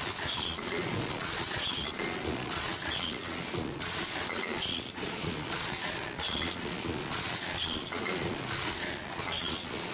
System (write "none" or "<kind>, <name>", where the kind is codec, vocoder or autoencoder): vocoder, Vocos